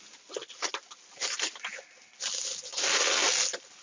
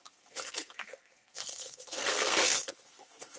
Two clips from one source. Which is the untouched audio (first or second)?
first